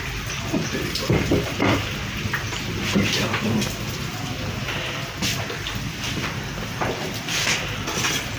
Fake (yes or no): yes